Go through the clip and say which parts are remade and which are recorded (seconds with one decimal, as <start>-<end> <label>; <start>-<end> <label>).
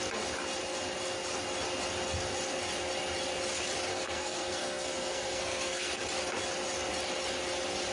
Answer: 0.0-3.9 recorded; 3.9-6.0 remade; 6.0-7.9 recorded